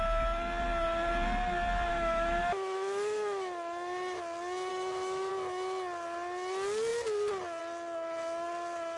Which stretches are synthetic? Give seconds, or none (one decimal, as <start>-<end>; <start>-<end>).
1.9-4.2; 4.7-5.3